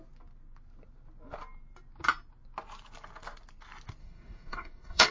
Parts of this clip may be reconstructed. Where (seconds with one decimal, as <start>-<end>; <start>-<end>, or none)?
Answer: 4.0-5.1